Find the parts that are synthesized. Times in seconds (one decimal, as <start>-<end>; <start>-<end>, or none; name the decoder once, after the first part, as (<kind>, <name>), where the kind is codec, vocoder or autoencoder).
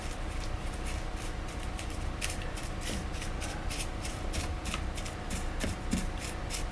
0.0-4.6 (vocoder, BigVGAN v2); 5.2-6.7